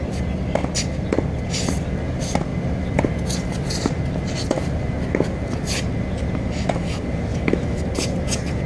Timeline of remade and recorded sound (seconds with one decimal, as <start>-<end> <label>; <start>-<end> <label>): 0.0-7.3 recorded; 7.3-7.8 remade; 7.8-8.7 recorded